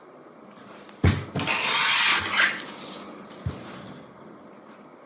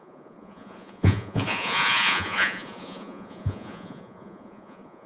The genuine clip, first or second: first